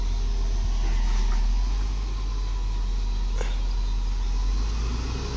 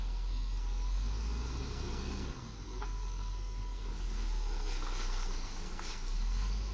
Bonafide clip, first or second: first